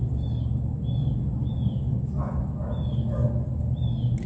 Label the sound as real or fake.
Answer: real